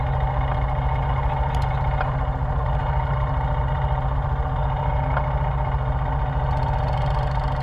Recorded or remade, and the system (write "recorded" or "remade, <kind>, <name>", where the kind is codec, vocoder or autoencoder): recorded